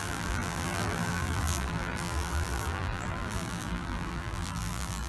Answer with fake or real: fake